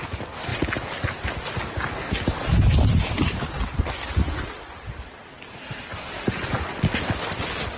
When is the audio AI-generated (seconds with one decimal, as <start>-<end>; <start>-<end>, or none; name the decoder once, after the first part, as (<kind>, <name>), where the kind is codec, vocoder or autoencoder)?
5.6-6.1 (codec, SNAC)